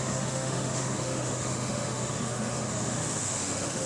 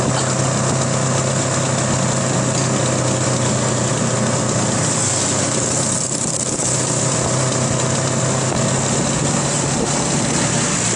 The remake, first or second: first